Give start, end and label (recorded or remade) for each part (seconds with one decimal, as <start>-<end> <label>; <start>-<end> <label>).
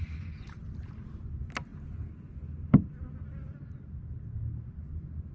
0.0-5.3 recorded